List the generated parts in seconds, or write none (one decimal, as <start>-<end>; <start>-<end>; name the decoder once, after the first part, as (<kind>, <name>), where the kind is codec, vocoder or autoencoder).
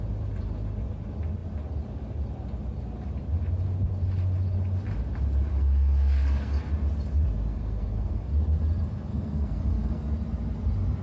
5.5-6.7 (codec, SNAC); 7.5-8.3; 9.1-10.0